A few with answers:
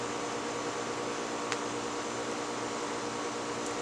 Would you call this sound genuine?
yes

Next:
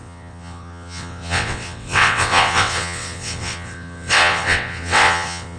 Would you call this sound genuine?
no